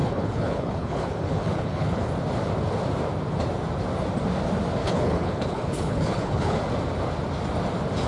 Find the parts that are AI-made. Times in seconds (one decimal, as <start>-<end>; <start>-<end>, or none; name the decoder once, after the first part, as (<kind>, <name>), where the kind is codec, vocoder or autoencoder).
0.0-2.1 (codec, HILCodec); 4.8-6.6